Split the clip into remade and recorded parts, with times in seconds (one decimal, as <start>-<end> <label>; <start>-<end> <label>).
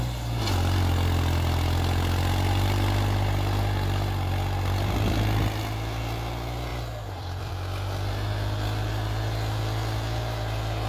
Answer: 0.0-6.7 recorded; 6.7-7.5 remade; 7.5-10.9 recorded